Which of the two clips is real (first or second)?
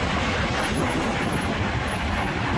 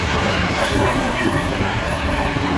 first